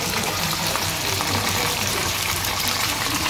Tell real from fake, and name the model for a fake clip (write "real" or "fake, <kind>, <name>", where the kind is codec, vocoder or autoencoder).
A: fake, vocoder, BigVGAN v2